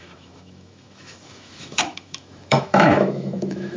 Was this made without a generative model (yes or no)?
no